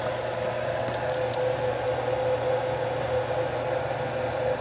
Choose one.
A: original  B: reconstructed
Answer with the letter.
A